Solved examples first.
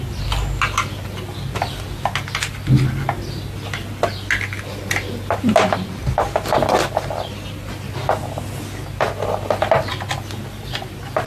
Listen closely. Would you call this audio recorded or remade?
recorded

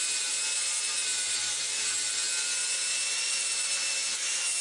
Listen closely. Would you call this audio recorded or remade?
recorded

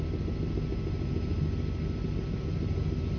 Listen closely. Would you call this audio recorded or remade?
recorded